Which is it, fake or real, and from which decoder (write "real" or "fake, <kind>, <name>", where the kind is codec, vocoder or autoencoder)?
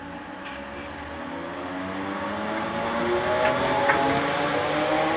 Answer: real